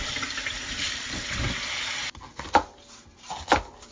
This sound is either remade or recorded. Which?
recorded